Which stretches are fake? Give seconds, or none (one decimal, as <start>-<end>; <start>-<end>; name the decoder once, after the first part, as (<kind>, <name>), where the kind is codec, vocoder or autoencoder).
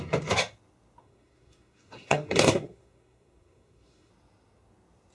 1.0-4.1 (codec, SNAC)